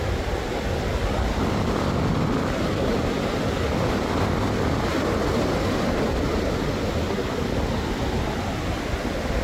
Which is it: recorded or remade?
recorded